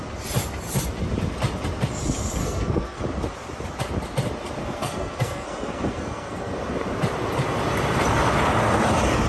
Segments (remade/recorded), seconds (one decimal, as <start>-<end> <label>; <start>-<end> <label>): 0.0-2.4 recorded; 2.4-3.0 remade; 3.0-4.6 recorded; 4.6-6.6 remade; 6.6-9.3 recorded